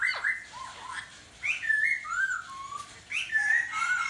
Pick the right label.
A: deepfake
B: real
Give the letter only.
B